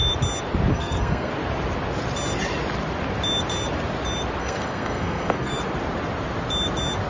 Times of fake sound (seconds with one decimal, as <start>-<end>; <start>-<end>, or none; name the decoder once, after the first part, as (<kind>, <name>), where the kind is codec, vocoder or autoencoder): 0.7-1.3 (codec, SNAC); 4.4-5.5